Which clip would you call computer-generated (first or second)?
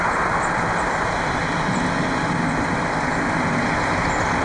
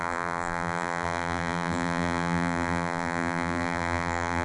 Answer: second